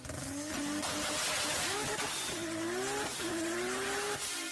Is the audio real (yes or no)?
yes